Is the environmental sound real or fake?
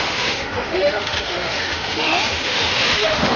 fake